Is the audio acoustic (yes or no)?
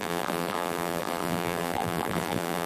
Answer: no